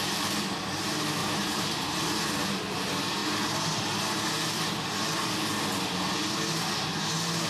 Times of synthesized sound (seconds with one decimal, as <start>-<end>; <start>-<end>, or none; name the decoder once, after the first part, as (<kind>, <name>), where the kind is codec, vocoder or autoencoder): 1.2-2.0 (vocoder, BigVGAN v2); 3.2-3.8